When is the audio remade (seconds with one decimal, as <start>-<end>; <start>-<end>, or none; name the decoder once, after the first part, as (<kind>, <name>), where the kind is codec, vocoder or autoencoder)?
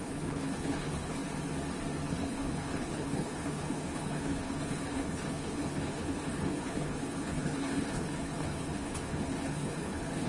0.0-1.2 (codec, HILCodec); 2.1-10.3